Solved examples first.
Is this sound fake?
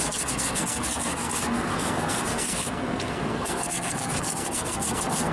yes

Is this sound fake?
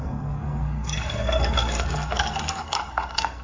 yes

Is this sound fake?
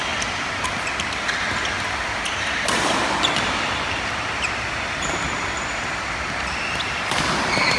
no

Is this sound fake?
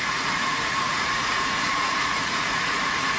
yes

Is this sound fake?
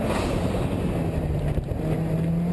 no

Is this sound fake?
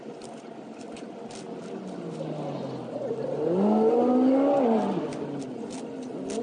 no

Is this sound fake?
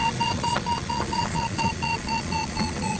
yes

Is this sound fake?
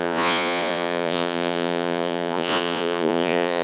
yes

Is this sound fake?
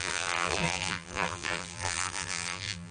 yes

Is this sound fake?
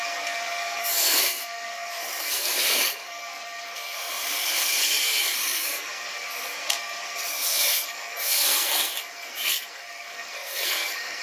yes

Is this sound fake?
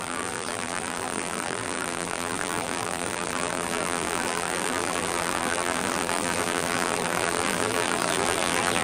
yes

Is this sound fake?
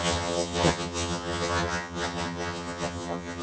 yes